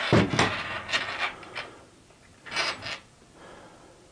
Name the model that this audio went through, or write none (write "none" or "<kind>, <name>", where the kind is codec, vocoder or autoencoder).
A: none